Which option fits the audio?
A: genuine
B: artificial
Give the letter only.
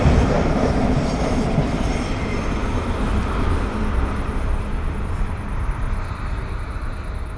B